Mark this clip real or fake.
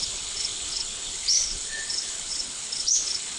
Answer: fake